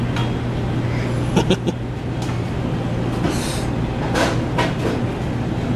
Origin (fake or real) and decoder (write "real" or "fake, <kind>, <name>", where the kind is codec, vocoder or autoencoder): real